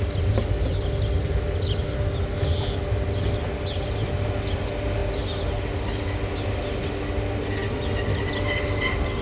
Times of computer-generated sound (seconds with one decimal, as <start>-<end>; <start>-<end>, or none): none